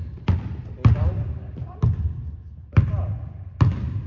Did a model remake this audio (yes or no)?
no